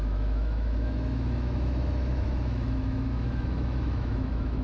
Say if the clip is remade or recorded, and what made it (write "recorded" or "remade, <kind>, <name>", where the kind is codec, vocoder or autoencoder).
remade, autoencoder, DAC-VAE